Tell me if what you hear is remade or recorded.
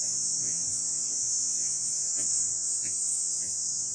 remade